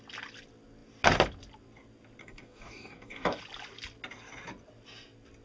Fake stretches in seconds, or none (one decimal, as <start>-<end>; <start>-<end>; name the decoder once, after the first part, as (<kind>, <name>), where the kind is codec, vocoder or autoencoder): 2.2-3.4 (codec, DAC)